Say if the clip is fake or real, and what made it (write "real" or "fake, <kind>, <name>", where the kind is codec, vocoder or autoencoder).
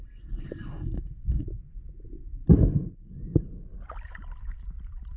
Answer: real